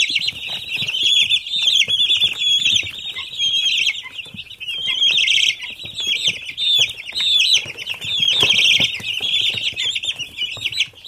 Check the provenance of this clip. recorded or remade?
recorded